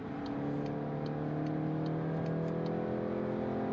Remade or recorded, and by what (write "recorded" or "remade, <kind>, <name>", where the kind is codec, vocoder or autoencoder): recorded